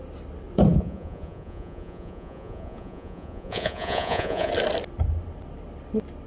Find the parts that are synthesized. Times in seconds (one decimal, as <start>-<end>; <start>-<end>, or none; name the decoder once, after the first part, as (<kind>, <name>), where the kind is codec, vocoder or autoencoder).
0.7-4.5 (vocoder, Vocos)